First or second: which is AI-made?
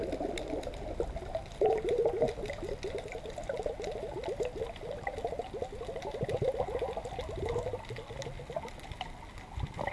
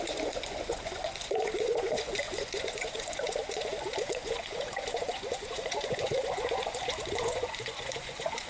second